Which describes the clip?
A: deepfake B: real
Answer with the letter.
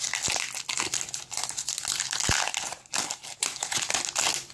B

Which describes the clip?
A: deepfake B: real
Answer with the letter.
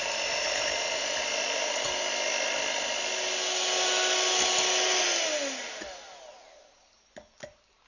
B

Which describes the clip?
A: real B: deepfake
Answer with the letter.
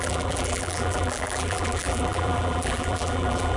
B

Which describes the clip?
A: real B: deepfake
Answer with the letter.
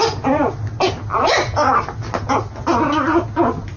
A